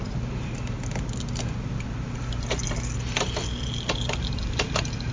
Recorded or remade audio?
recorded